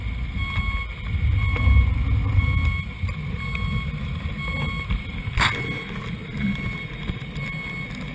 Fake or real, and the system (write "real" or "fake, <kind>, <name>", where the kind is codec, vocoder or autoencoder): real